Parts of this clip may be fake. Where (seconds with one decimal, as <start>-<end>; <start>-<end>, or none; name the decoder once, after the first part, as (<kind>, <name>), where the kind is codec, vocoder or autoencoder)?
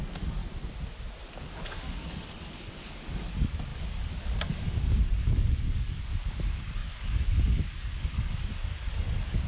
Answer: 0.0-0.4 (codec, DAC); 1.2-9.5